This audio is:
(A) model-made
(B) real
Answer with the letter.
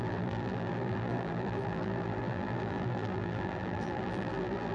A